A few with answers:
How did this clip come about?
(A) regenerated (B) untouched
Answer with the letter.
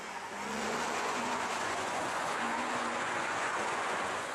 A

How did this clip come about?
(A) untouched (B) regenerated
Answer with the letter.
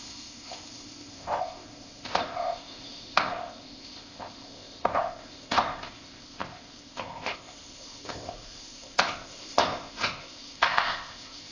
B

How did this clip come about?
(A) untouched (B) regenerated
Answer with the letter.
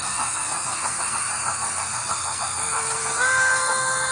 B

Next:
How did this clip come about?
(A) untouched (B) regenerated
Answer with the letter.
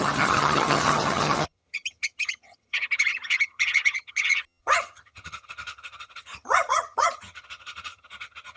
B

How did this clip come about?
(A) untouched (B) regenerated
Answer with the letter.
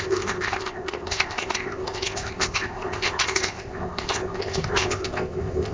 B